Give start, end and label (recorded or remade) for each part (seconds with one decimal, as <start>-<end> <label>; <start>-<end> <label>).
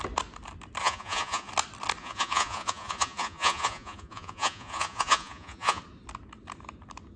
0.0-0.8 recorded; 0.8-1.5 remade; 1.5-2.0 recorded; 2.0-5.8 remade; 5.8-7.2 recorded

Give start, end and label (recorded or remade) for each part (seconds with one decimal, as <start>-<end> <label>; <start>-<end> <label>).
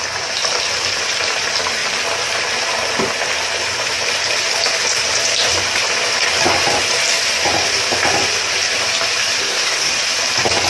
0.0-9.4 recorded; 9.4-9.9 remade; 9.9-10.7 recorded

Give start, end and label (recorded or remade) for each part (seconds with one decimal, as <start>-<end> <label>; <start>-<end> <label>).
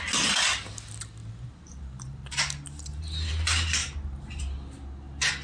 0.0-1.2 recorded; 1.2-3.3 remade; 3.3-3.8 recorded; 3.8-4.4 remade; 4.4-5.4 recorded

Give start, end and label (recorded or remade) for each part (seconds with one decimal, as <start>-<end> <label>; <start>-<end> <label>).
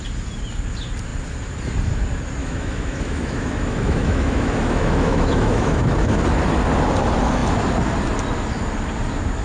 0.0-2.4 recorded; 2.4-6.2 remade; 6.2-9.4 recorded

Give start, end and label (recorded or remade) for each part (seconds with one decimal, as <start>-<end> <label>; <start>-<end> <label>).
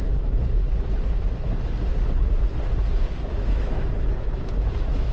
0.0-0.6 remade; 0.6-3.3 recorded; 3.3-5.1 remade